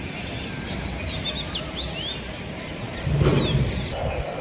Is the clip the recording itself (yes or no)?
yes